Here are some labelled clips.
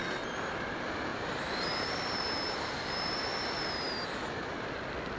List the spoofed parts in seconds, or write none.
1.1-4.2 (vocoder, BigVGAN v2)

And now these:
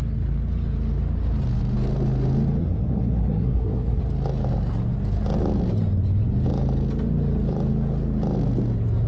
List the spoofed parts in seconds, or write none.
2.6-4.0 (codec, SNAC)

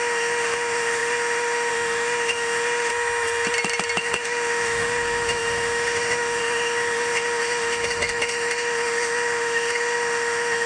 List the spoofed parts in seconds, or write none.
0.0-2.9 (autoencoder, DAC-VAE); 4.0-10.7

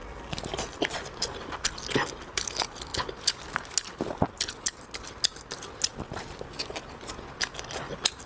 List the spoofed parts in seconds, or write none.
none

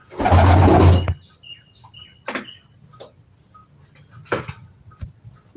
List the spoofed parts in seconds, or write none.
none